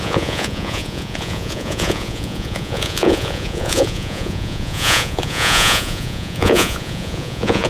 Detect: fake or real fake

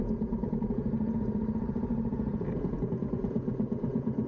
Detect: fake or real fake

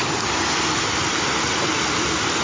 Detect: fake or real real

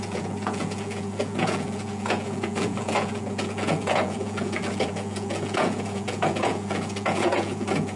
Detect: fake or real fake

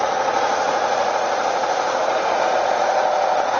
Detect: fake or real fake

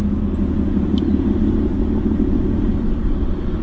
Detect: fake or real real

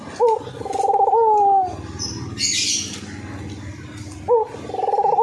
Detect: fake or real real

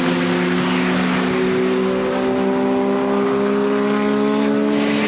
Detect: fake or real real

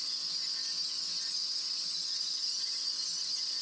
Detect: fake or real real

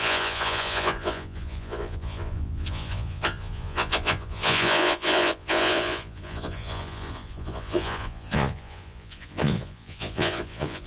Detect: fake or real fake